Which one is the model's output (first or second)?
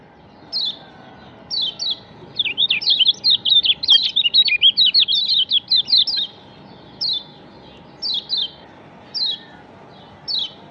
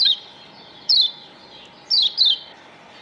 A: second